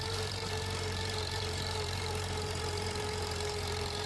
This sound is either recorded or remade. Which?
remade